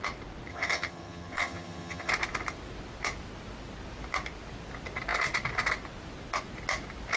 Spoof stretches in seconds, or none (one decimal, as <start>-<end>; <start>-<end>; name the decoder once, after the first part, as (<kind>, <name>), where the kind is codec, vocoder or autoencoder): 0.5-2.1 (vocoder, HiFi-GAN)